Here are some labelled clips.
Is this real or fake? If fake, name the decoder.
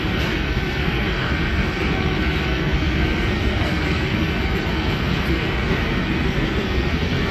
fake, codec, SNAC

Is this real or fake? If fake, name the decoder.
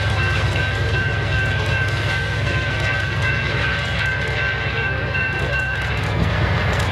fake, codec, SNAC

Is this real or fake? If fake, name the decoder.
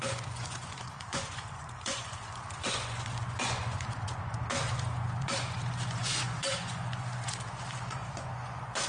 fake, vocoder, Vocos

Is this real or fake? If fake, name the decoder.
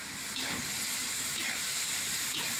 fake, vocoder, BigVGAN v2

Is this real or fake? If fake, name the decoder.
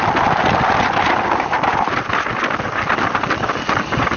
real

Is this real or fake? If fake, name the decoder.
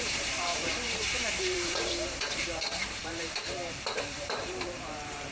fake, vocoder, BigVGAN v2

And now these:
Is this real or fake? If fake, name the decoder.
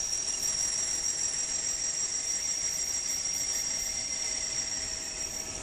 real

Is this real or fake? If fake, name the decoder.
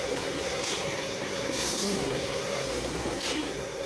fake, codec, SNAC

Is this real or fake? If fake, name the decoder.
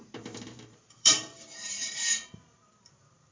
fake, vocoder, BigVGAN v2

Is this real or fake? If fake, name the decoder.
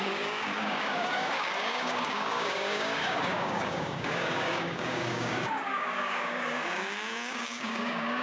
fake, codec, DAC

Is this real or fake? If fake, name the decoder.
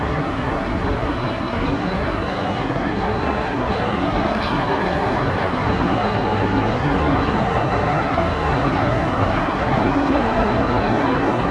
fake, codec, SNAC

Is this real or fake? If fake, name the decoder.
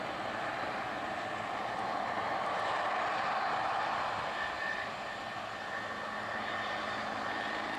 real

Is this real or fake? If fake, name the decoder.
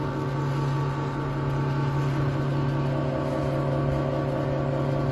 real